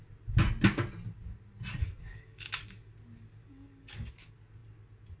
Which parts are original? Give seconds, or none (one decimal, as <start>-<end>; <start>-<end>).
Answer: 0.0-1.8; 2.9-3.4; 4.1-5.2